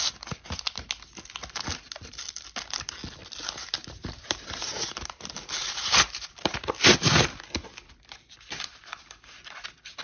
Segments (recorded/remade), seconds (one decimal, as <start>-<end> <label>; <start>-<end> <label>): 0.0-3.8 recorded; 3.8-6.7 remade; 6.7-10.0 recorded